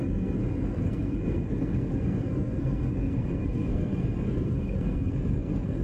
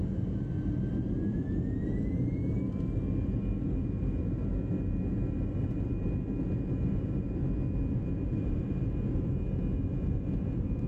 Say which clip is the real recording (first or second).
second